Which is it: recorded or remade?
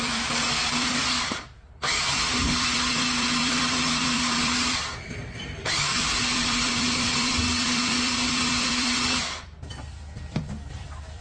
remade